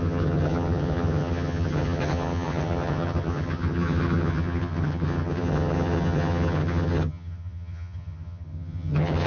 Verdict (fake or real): fake